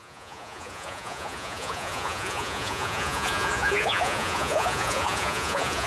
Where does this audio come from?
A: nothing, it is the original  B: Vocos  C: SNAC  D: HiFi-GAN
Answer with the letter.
B